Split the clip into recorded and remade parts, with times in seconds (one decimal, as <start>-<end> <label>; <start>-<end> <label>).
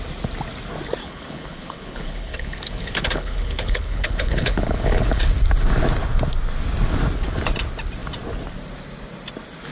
0.0-1.0 recorded; 1.0-5.2 remade; 5.2-9.7 recorded